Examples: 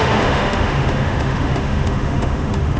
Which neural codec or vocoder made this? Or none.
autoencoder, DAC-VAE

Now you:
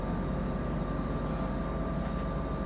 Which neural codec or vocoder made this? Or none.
none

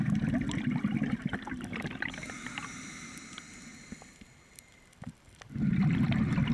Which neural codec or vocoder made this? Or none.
none